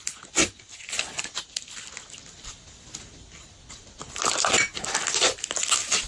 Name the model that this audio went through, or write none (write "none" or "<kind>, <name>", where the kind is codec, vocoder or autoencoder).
none